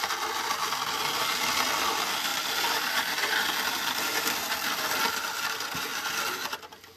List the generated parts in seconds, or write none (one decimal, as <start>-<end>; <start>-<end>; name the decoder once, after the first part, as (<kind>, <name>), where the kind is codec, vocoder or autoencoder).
none